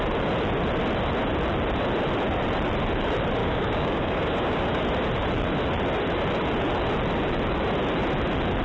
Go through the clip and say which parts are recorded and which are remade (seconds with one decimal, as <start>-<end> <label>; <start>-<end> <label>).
0.0-3.4 recorded; 3.4-4.8 remade; 4.8-8.6 recorded